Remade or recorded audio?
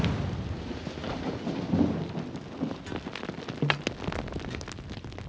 recorded